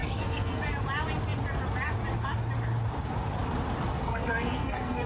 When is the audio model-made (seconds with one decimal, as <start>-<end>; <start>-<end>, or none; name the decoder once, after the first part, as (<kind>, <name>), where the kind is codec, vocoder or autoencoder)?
0.0-0.6 (codec, SNAC); 4.1-5.1